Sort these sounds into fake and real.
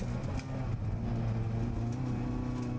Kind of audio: real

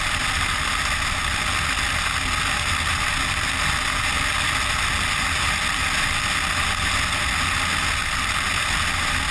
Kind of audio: real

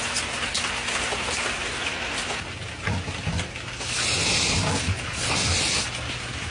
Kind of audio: real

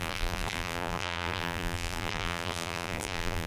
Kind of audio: fake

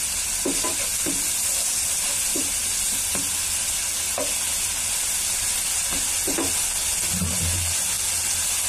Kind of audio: real